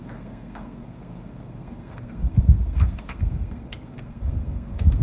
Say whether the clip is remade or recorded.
remade